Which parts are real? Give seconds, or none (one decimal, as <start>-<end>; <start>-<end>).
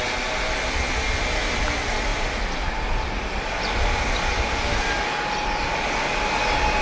0.0-6.8